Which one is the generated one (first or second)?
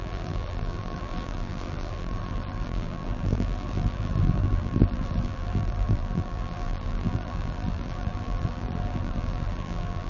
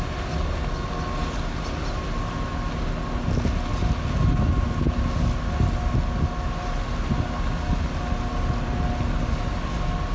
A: first